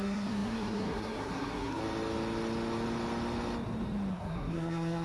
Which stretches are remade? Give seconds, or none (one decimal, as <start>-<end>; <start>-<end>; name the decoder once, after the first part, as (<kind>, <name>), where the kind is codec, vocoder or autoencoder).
0.0-1.8 (codec, SNAC); 4.1-5.0